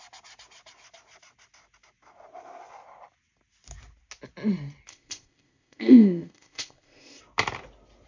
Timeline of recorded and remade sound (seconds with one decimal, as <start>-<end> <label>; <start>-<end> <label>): 0.0-4.9 recorded; 4.9-7.2 remade; 7.2-8.1 recorded